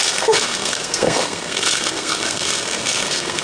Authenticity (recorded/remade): remade